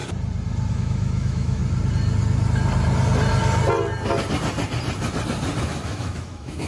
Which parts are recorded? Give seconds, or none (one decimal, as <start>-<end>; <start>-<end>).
0.0-0.7; 1.6-5.6